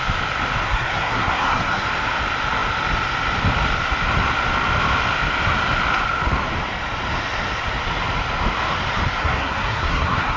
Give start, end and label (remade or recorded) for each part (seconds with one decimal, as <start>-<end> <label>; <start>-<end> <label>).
0.0-0.6 recorded; 0.6-1.8 remade; 1.8-9.2 recorded; 9.2-10.4 remade